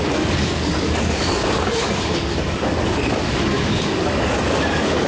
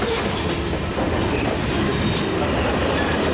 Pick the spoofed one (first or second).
first